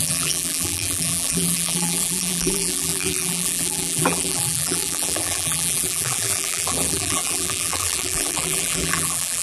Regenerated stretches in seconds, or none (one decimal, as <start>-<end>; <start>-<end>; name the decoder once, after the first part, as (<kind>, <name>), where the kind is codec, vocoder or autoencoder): 0.0-9.4 (vocoder, BigVGAN v2)